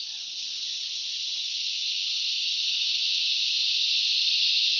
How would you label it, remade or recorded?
remade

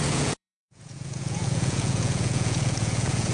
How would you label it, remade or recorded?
remade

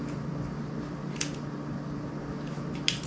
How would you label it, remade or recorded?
recorded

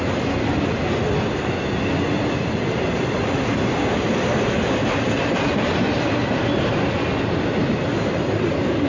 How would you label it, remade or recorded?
recorded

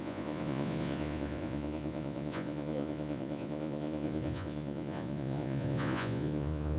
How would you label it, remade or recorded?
remade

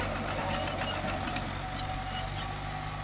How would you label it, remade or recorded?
recorded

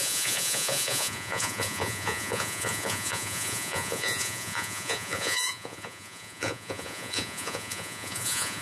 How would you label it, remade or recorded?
remade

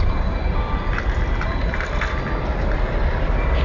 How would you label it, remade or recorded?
recorded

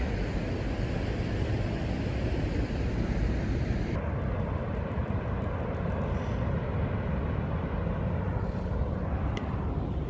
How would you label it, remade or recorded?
recorded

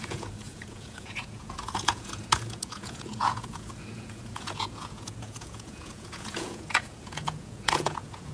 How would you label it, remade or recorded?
remade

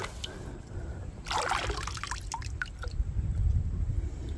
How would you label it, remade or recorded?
recorded